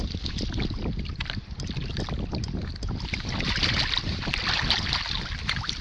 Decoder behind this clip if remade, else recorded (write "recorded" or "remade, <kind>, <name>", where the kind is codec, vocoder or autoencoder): recorded